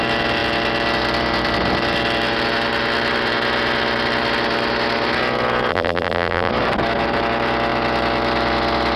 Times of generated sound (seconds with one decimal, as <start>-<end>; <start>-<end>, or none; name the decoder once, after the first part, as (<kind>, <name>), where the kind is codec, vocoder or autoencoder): 5.7-6.5 (vocoder, BigVGAN v2)